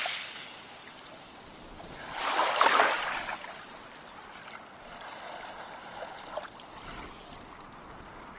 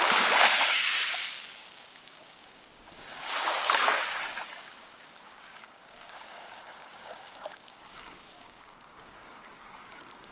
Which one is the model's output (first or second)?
second